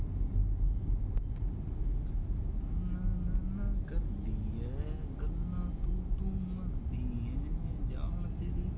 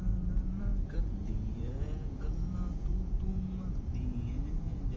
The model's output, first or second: second